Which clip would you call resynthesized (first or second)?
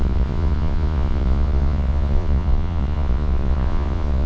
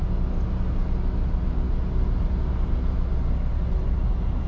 first